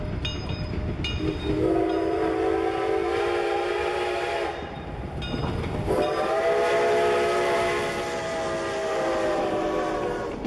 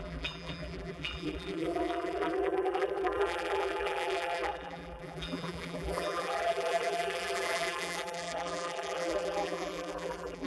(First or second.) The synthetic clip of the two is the second